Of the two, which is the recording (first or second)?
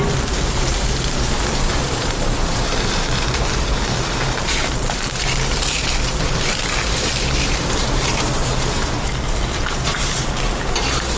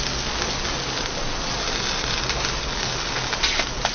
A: second